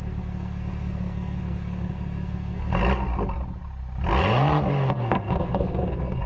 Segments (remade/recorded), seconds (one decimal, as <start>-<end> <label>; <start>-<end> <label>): 0.0-2.8 remade; 2.8-4.9 recorded; 4.9-6.3 remade